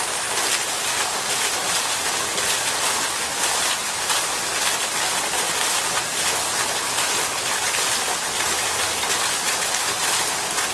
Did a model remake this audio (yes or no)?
no